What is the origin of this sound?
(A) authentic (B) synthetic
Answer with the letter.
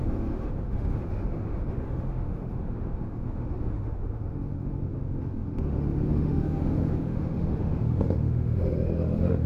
B